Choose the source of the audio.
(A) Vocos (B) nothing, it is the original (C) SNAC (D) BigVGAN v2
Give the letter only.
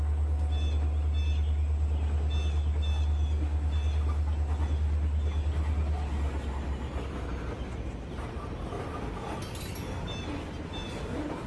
B